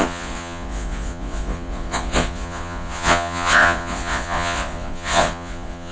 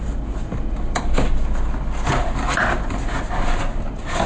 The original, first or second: second